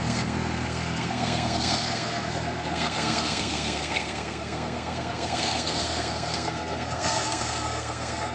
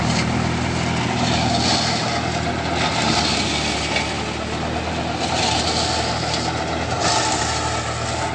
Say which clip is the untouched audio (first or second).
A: second